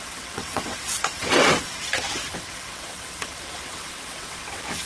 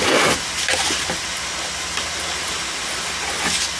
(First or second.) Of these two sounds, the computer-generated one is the first